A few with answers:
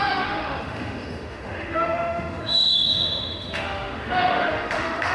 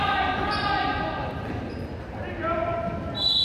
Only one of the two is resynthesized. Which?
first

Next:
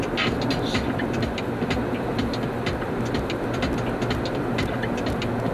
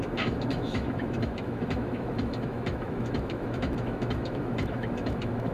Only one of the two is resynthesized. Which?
second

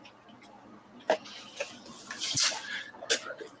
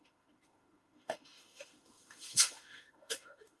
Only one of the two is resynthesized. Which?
second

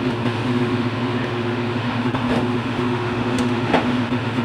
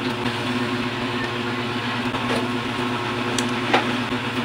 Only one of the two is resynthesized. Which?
first